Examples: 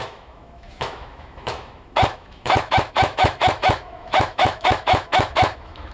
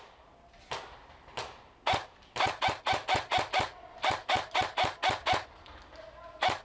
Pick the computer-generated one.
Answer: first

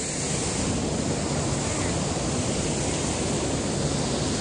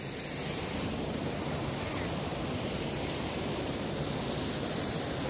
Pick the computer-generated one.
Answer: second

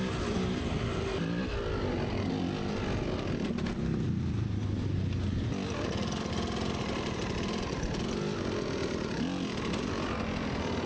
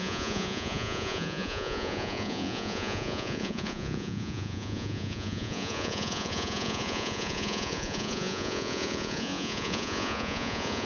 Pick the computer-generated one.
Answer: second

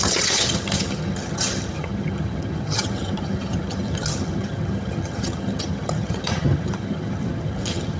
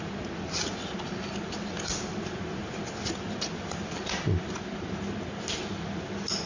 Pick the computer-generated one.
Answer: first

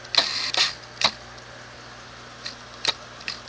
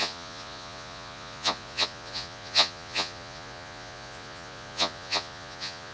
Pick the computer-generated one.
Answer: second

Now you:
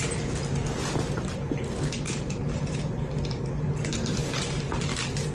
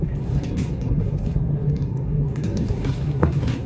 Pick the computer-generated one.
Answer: second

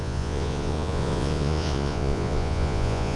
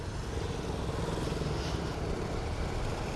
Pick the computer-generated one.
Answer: first